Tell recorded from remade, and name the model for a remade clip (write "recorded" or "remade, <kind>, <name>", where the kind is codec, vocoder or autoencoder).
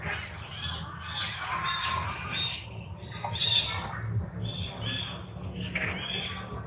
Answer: recorded